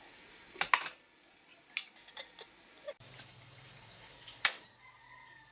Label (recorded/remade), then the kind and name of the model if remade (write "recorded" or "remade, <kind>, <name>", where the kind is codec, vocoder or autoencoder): recorded